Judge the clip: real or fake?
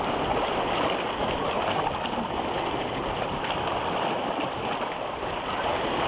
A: real